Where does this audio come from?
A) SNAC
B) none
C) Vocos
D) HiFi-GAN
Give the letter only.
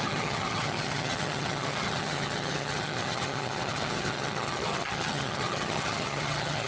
D